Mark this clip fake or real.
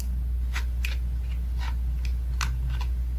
real